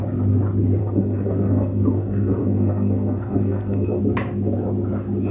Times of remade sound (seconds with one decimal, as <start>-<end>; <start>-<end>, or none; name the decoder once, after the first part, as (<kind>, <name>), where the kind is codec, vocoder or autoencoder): 0.8-4.0 (codec, SNAC)